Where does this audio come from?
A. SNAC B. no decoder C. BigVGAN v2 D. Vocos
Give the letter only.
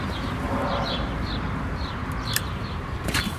C